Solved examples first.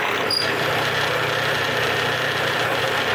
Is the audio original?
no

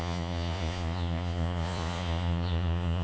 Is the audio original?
no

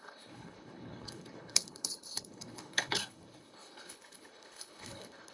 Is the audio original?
no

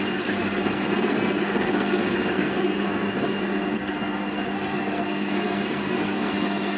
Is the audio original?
no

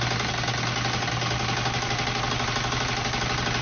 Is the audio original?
yes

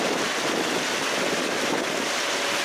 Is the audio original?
yes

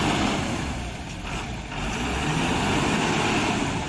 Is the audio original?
yes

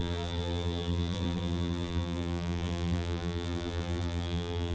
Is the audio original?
no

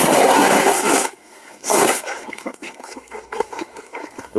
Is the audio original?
no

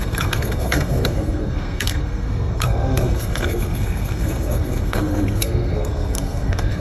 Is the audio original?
no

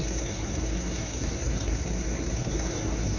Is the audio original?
no